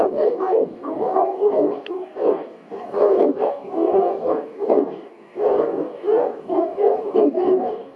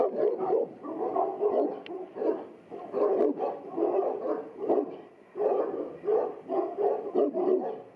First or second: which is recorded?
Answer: second